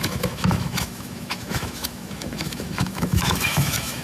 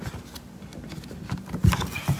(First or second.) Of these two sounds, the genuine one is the second